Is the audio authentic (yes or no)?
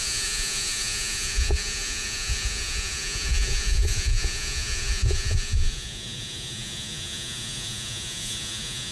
no